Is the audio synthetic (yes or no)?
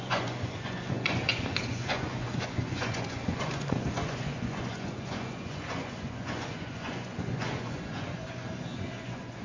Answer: yes